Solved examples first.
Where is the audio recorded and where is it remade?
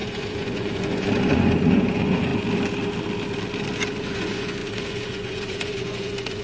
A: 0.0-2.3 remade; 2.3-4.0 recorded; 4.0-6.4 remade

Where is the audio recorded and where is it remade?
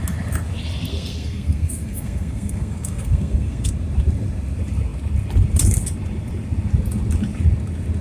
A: 0.0-0.9 recorded; 0.9-3.7 remade; 3.7-8.0 recorded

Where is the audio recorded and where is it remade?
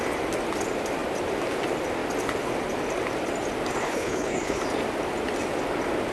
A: 0.0-3.8 recorded; 3.8-4.6 remade; 4.6-6.1 recorded